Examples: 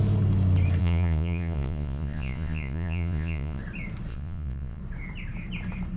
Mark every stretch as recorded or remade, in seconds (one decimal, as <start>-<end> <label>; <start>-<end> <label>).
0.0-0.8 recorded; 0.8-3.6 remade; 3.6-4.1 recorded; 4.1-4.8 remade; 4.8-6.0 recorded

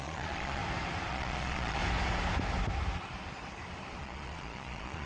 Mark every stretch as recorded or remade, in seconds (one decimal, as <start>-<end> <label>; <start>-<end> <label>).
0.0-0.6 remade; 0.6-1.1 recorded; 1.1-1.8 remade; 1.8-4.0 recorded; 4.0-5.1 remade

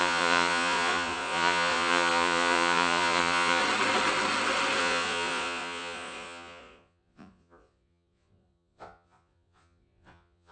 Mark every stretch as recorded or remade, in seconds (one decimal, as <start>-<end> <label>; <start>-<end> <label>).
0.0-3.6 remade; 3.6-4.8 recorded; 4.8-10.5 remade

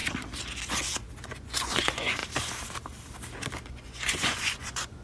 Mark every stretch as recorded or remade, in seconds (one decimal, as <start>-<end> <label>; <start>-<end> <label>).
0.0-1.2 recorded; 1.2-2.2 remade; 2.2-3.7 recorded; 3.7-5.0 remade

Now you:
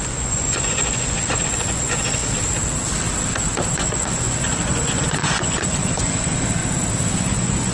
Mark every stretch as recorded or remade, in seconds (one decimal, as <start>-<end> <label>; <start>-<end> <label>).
0.0-2.2 remade; 2.2-3.7 recorded; 3.7-6.6 remade; 6.6-7.1 recorded; 7.1-7.7 remade

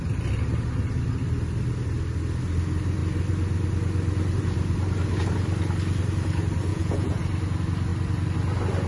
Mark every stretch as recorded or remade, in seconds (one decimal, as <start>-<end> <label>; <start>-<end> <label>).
0.0-6.7 recorded; 6.7-7.2 remade; 7.2-8.9 recorded